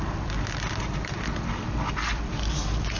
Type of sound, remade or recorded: recorded